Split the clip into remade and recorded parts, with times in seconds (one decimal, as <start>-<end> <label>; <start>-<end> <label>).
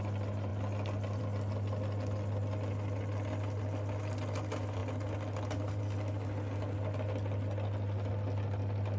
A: 0.0-9.0 recorded